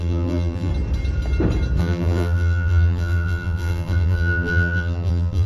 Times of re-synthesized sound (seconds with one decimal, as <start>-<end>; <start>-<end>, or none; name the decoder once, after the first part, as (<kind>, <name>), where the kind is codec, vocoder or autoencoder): 0.0-0.7 (vocoder, BigVGAN v2); 1.8-5.5